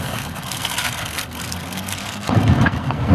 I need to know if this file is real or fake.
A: fake